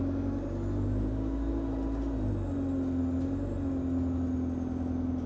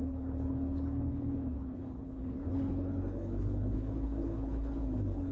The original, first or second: first